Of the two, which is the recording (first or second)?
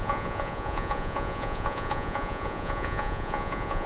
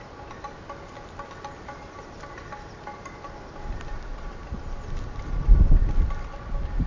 second